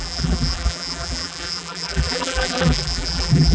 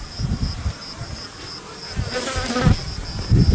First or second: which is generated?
first